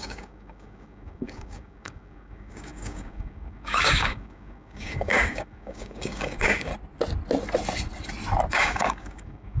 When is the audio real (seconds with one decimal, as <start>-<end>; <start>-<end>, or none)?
6.7-8.5